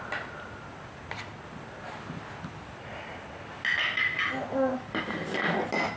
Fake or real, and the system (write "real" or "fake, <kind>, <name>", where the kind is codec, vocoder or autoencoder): real